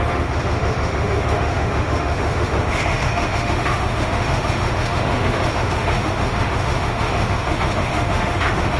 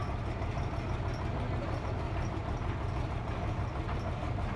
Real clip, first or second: second